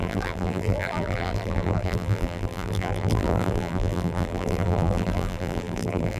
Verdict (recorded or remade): remade